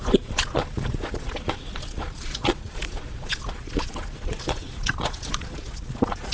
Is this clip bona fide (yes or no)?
no